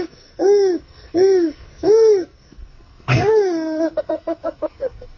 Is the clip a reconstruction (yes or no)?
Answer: yes